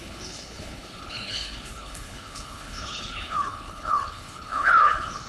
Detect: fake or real fake